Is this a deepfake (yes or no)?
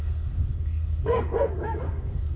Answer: yes